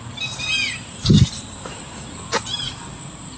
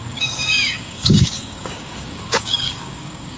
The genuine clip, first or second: first